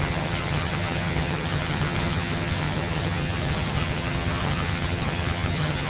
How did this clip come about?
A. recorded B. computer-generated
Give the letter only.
B